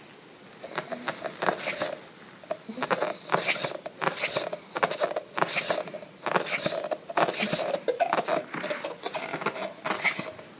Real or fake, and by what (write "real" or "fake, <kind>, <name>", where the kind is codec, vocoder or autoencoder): real